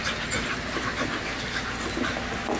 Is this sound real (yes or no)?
yes